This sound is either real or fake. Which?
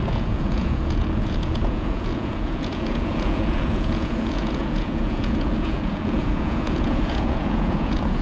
fake